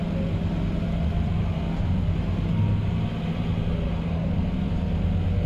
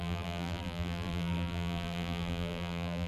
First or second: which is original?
first